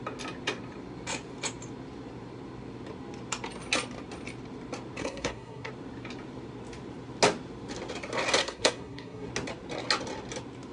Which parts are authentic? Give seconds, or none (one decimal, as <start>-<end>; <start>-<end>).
0.0-5.0; 5.7-8.4; 9.3-10.7